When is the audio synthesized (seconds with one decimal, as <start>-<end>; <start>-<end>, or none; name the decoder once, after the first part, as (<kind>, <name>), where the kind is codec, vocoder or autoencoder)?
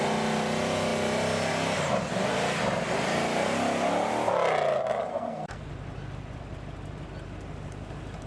5.1-5.7 (codec, SNAC)